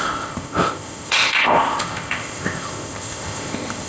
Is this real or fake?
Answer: fake